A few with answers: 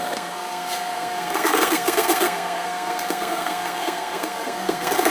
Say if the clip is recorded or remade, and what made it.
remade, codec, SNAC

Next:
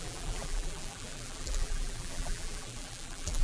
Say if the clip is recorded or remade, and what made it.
remade, vocoder, BigVGAN v2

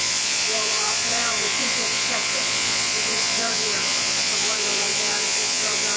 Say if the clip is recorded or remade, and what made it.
remade, vocoder, Vocos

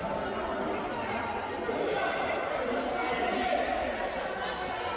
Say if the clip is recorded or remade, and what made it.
recorded